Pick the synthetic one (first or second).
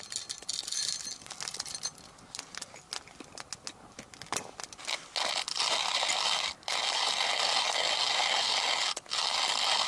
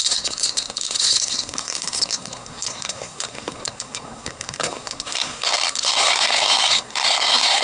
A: second